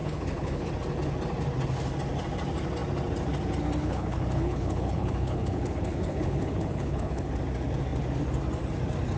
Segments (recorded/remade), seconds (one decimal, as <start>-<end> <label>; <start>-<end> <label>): 0.0-0.7 remade; 0.7-3.8 recorded; 3.8-7.3 remade; 7.3-9.2 recorded